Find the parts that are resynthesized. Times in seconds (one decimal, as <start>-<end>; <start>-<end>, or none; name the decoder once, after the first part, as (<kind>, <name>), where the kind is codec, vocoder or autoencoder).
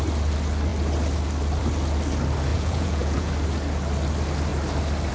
2.5-3.3 (vocoder, Vocos)